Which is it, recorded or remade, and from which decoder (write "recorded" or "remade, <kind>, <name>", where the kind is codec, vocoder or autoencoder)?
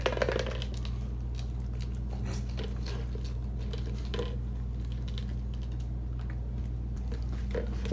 recorded